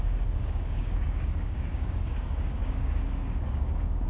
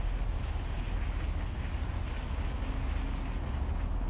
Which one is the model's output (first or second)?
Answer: first